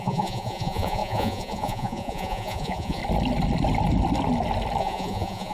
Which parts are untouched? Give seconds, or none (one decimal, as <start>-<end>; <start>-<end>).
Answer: 3.0-4.8